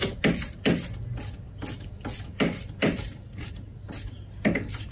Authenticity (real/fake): real